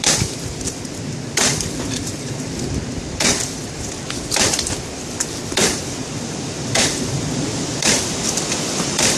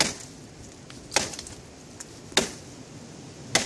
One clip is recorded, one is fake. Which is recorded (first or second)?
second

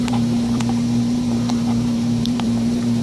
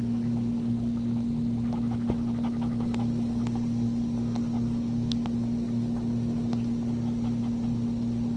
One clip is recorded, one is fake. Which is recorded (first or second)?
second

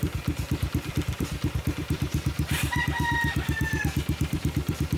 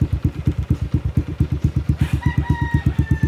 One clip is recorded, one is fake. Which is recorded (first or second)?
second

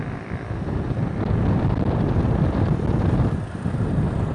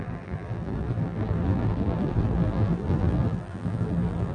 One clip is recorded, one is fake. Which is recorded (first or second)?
first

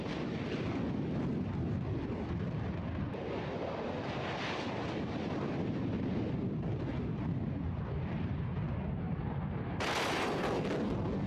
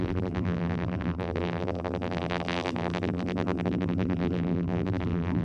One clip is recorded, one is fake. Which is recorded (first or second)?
first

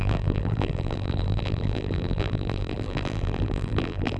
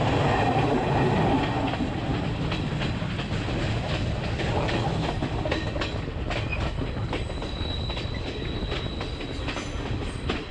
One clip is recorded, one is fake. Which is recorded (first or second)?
second